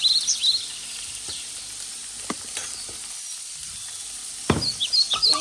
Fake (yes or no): yes